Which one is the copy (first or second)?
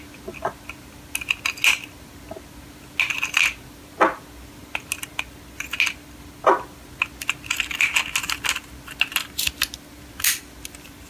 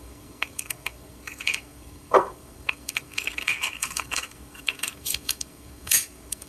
second